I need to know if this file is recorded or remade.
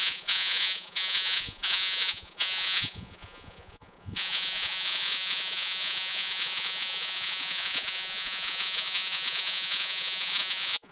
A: remade